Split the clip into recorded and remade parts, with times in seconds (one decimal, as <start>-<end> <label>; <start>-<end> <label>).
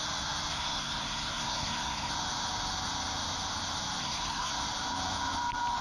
0.0-0.5 recorded; 0.5-2.1 remade; 2.1-4.0 recorded; 4.0-4.5 remade; 4.5-5.8 recorded